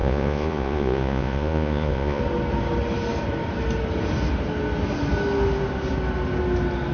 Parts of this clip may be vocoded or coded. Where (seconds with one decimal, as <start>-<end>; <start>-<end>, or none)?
0.0-2.2